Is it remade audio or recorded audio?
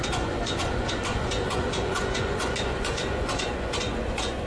remade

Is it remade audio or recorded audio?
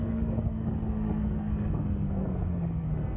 remade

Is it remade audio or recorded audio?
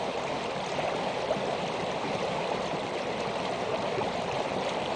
recorded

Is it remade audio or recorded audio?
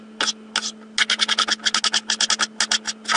recorded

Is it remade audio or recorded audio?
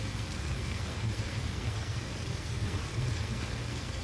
remade